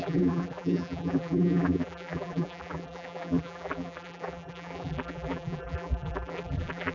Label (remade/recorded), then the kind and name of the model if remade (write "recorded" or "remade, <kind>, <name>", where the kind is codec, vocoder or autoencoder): remade, vocoder, BigVGAN v2